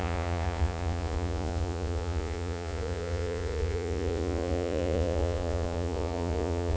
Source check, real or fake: fake